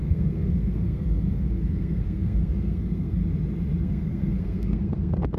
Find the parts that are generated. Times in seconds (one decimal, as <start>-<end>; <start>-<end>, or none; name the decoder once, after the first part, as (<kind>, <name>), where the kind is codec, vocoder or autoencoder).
0.0-3.2 (codec, SNAC); 3.8-5.4